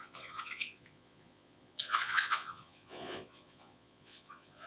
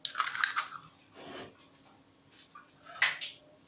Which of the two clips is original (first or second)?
second